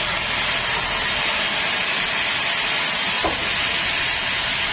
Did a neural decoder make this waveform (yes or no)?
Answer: no